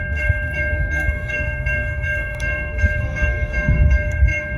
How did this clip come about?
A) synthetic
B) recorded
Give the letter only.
A